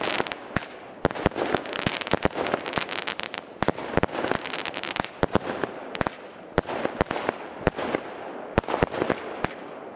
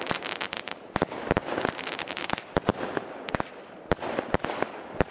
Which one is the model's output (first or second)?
second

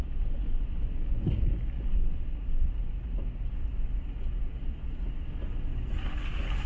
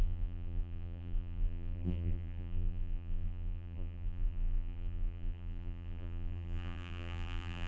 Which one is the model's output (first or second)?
second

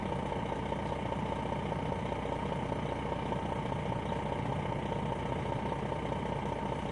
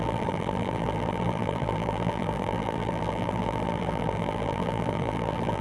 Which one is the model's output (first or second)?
second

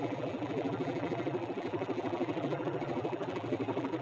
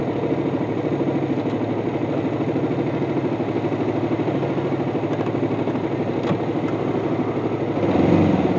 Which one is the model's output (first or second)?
first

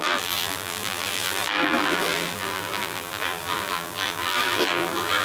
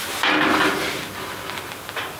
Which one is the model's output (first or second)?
first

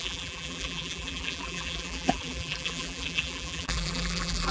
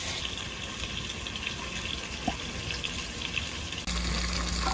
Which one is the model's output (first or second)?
first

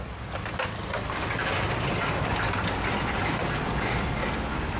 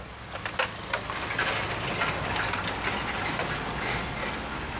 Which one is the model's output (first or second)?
first